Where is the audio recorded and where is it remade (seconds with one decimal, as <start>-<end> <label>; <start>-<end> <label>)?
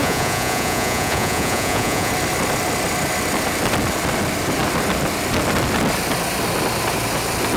0.0-2.1 remade; 2.1-7.6 recorded